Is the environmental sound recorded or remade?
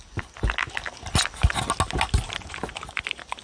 recorded